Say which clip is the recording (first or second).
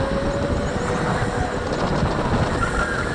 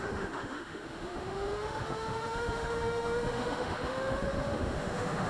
first